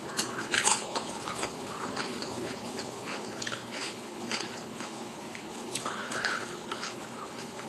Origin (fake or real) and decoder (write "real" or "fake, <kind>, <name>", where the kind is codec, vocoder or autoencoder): fake, codec, HILCodec